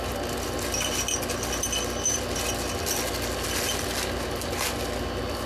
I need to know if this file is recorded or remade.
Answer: recorded